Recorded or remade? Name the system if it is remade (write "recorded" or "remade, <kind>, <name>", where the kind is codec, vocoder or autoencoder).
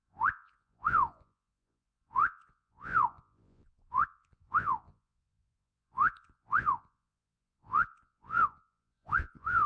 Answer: remade, vocoder, Vocos